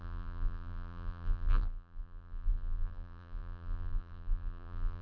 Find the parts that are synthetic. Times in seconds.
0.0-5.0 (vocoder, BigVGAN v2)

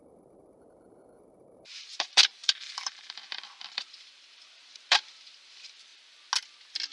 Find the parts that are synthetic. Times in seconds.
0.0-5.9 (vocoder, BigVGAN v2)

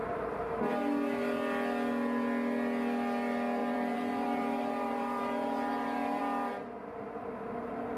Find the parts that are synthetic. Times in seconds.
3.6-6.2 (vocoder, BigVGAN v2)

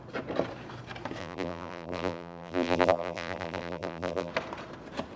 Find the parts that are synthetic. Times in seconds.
1.2-4.3 (vocoder, BigVGAN v2)

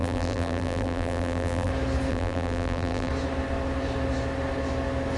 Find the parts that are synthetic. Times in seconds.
0.0-1.7 (vocoder, BigVGAN v2); 2.1-3.1

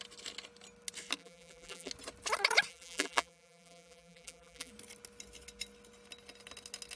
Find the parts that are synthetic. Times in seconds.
1.2-1.9 (vocoder, BigVGAN v2); 2.7-4.7

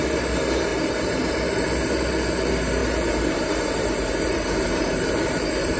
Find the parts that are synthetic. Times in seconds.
0.7-1.3 (vocoder, BigVGAN v2); 2.8-5.8

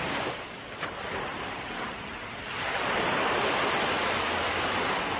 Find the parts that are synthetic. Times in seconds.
1.3-4.4 (vocoder, BigVGAN v2)